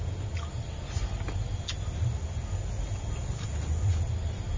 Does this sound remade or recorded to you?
recorded